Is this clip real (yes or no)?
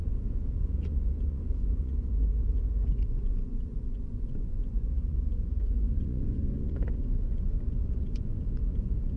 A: no